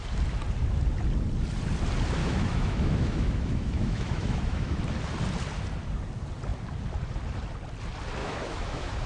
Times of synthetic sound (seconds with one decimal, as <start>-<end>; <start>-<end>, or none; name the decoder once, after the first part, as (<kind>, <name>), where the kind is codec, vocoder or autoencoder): 2.2-4.8 (autoencoder, DAC-VAE); 8.2-9.1